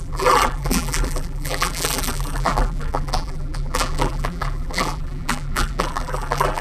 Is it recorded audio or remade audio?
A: remade